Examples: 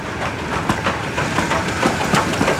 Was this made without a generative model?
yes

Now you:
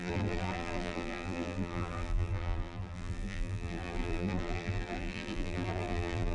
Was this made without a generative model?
no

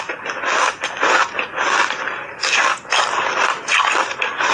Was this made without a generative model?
yes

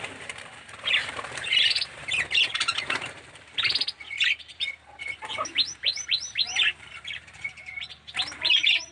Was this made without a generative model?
no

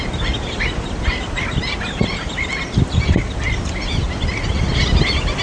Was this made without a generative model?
yes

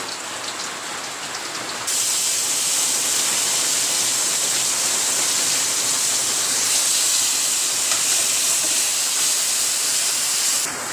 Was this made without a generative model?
yes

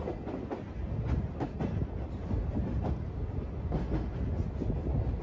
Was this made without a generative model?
yes